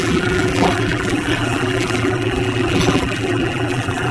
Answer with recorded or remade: remade